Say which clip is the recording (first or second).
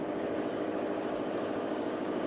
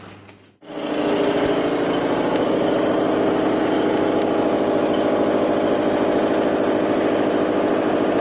second